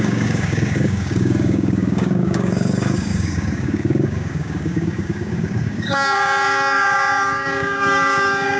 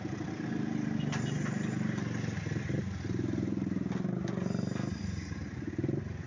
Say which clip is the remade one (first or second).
first